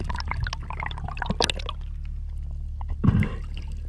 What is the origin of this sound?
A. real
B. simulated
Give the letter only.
A